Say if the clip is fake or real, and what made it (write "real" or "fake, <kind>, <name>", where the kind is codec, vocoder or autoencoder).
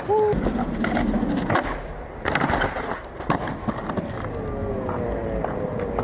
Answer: real